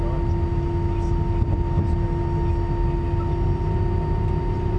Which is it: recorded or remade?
recorded